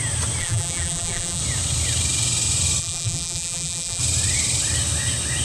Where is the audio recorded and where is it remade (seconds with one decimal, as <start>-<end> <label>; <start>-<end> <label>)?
0.0-0.4 recorded; 0.4-1.4 remade; 1.4-2.8 recorded; 2.8-4.0 remade; 4.0-5.4 recorded